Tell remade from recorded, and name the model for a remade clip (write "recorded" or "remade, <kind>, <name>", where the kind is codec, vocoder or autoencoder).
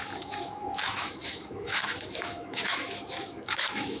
remade, autoencoder, DAC-VAE